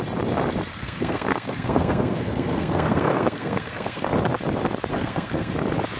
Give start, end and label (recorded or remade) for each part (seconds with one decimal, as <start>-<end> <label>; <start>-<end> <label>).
0.0-0.7 recorded; 0.7-4.1 remade; 4.1-4.9 recorded; 4.9-5.5 remade; 5.5-6.0 recorded